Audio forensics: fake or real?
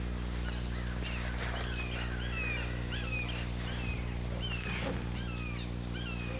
real